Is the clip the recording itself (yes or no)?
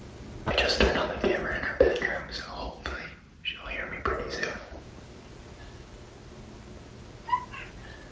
yes